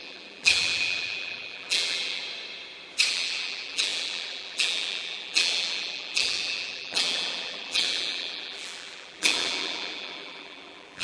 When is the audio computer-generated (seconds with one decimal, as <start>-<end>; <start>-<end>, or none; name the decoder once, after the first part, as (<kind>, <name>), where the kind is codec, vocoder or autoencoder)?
0.0-2.2 (vocoder, BigVGAN v2); 3.1-11.0